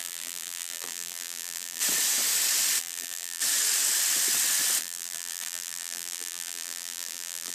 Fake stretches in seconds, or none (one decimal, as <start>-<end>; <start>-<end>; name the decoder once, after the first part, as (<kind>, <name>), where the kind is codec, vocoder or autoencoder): 0.0-1.8 (vocoder, BigVGAN v2); 2.8-3.4; 4.8-7.5